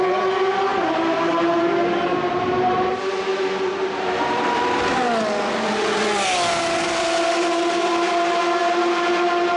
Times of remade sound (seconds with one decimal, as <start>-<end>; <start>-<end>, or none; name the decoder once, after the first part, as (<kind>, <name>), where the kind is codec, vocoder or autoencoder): 3.3-4.6 (vocoder, BigVGAN v2)